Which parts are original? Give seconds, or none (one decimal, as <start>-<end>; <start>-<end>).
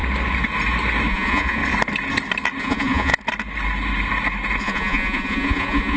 0.0-1.1; 1.6-2.6; 3.1-4.6